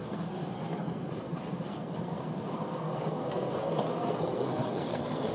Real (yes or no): no